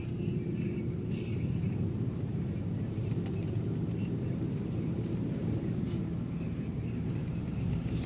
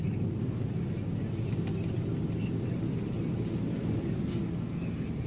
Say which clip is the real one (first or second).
second